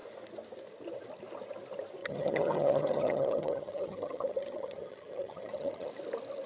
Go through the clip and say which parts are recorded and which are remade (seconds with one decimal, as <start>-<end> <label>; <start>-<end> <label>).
0.0-2.0 recorded; 2.0-5.9 remade; 5.9-6.5 recorded